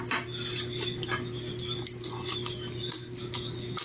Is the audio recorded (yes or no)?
yes